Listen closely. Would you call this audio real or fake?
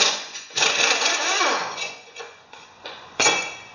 fake